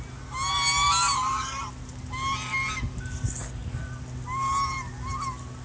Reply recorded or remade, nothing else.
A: recorded